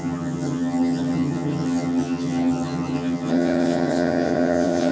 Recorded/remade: remade